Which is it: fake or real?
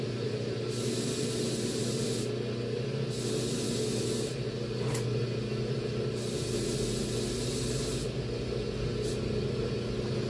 real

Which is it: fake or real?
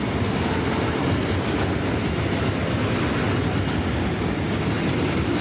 real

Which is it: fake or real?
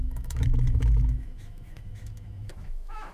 fake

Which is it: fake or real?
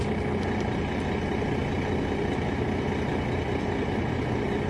real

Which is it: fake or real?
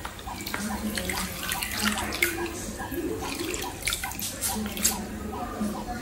real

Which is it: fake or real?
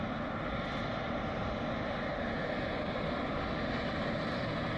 real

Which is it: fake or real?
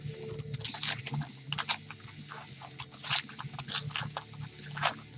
real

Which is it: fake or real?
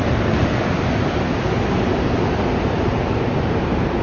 fake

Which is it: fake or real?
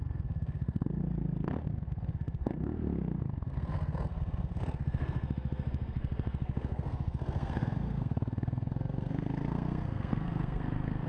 fake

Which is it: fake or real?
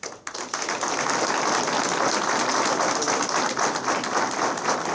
real